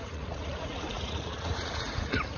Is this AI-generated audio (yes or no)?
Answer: yes